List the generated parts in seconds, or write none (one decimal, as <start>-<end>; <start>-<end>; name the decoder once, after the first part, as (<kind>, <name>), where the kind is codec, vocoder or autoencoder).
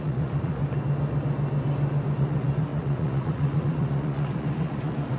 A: 0.0-0.6 (vocoder, Vocos); 2.2-5.2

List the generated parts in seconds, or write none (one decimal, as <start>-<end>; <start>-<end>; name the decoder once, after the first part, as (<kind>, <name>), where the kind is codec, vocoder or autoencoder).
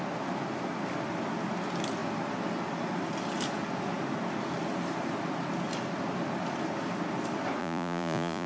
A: 7.6-8.5 (vocoder, Vocos)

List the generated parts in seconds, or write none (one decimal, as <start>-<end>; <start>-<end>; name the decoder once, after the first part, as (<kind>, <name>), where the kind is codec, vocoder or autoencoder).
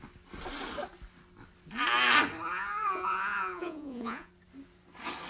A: 2.5-4.3 (vocoder, Vocos)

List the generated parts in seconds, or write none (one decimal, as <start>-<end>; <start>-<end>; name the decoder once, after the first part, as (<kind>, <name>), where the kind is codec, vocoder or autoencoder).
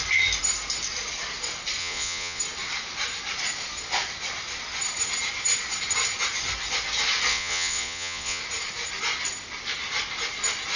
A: 1.8-2.4 (vocoder, Vocos); 7.3-8.4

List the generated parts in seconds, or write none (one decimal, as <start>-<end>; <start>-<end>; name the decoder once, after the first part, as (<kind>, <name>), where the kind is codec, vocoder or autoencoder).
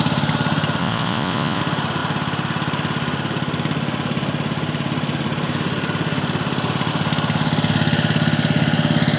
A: 0.8-1.6 (vocoder, Vocos)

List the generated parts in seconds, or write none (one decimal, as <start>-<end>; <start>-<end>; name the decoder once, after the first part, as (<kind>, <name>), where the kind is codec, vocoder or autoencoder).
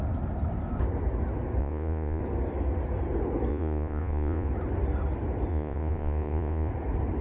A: 1.6-2.2 (vocoder, Vocos); 3.5-4.5; 5.5-6.7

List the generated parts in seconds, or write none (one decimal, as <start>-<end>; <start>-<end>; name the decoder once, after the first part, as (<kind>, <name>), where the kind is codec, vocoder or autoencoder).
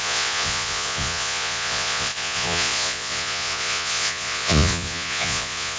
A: 0.0-5.8 (vocoder, Vocos)